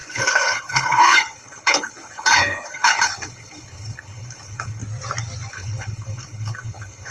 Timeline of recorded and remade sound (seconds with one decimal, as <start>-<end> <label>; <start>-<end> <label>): 0.0-4.8 remade; 4.8-5.5 recorded; 5.5-7.1 remade